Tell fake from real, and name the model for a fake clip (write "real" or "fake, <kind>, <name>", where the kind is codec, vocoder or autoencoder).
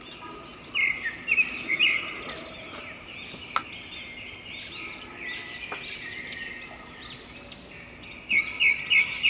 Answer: real